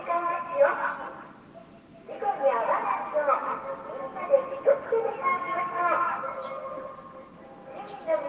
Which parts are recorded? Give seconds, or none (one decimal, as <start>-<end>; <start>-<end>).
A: 0.0-8.3

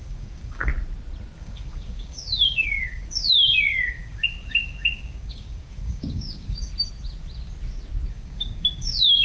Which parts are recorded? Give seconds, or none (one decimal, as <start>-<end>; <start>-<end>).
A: 0.7-1.4; 6.7-8.1

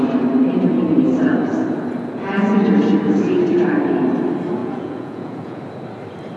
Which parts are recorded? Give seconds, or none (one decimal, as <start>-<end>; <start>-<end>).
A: 0.0-4.6; 5.6-6.4

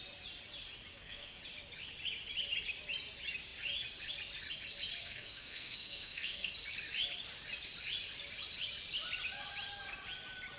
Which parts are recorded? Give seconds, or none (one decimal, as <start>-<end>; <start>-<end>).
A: 0.0-0.9; 1.4-5.0; 6.5-10.6